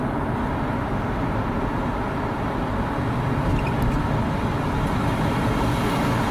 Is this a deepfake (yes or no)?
no